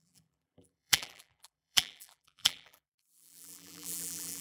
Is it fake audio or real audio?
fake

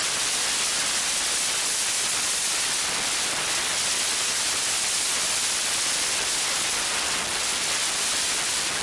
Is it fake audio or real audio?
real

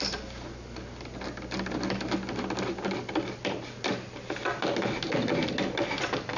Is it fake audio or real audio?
real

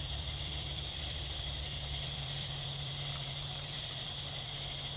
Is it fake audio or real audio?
fake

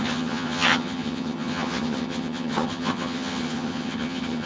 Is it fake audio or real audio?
fake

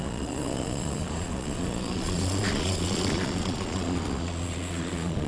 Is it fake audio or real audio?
fake